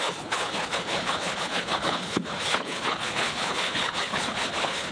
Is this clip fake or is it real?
fake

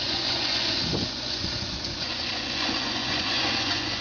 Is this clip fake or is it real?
fake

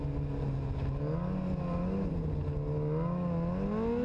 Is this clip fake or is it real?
real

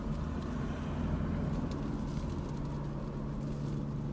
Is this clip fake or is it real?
real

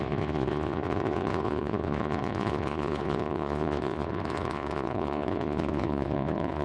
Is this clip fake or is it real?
fake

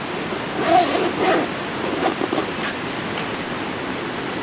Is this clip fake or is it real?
real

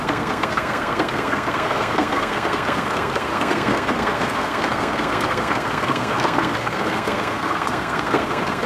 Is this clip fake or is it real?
fake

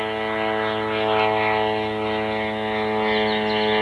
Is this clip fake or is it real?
real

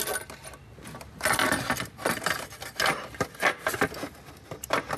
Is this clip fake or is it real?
real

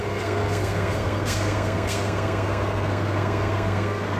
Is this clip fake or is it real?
fake